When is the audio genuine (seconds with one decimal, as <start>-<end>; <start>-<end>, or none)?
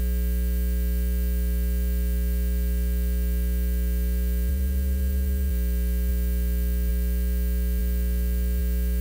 0.0-4.5; 5.5-9.0